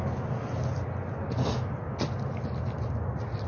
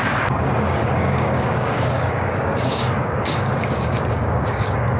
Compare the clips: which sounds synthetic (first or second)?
second